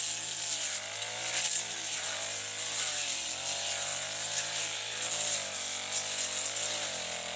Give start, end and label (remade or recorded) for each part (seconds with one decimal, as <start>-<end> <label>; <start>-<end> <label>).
0.0-7.4 recorded